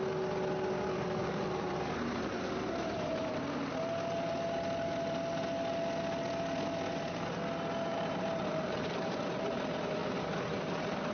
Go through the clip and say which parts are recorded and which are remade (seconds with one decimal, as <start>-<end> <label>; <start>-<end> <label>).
0.0-1.2 recorded; 1.2-3.4 remade; 3.4-7.9 recorded; 7.9-9.2 remade; 9.2-10.0 recorded; 10.0-11.1 remade